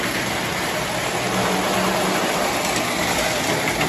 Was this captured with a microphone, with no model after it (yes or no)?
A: yes